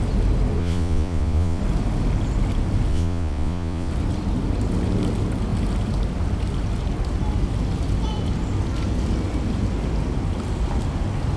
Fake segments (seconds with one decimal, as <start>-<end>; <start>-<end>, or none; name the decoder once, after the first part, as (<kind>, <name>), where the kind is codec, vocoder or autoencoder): 0.6-1.6 (vocoder, Vocos); 2.9-3.9